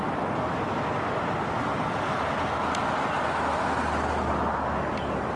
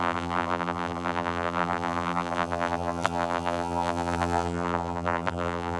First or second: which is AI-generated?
second